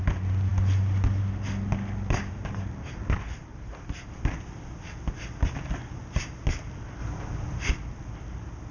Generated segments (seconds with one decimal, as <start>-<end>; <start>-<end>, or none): 3.5-4.3; 7.0-7.7